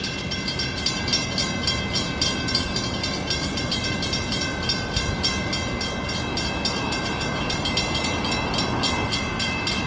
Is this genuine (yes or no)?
yes